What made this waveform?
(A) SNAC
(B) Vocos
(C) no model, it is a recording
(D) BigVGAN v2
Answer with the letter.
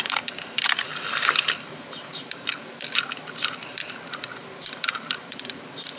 D